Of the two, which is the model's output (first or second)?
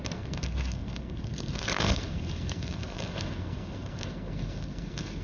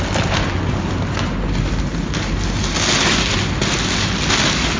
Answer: first